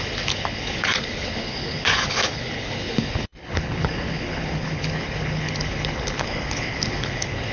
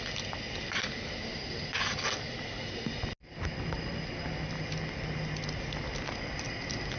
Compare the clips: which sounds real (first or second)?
second